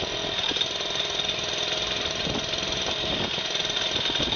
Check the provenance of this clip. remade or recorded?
recorded